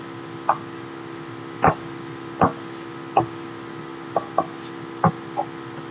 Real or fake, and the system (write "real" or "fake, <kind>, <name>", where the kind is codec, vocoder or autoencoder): real